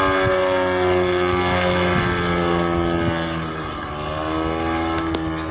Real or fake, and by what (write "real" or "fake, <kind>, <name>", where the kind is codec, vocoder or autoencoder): real